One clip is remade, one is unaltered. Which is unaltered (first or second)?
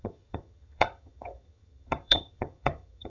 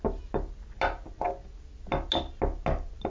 second